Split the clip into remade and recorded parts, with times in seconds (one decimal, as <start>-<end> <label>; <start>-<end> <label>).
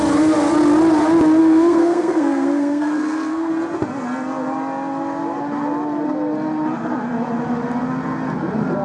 0.0-1.4 recorded; 1.4-3.5 remade; 3.5-8.8 recorded